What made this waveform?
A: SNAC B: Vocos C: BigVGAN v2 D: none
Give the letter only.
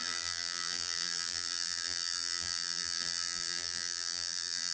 C